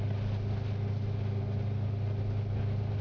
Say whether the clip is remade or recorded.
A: recorded